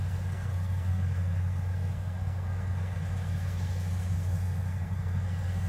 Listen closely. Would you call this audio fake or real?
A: fake